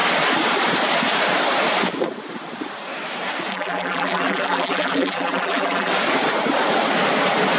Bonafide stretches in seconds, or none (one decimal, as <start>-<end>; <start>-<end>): 0.0-3.5; 5.9-7.6